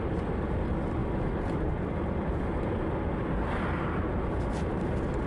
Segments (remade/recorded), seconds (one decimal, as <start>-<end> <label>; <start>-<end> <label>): 0.0-5.3 recorded